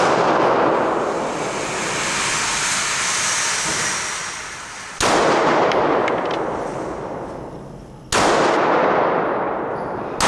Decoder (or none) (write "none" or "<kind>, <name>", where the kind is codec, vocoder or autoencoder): none